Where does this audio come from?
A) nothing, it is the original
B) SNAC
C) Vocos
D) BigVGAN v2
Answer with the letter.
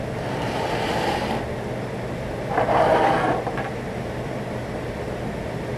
A